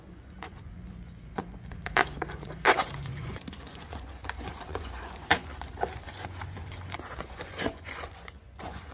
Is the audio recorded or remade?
remade